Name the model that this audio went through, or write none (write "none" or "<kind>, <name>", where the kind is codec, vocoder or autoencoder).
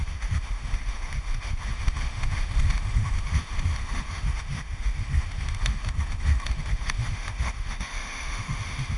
autoencoder, DAC-VAE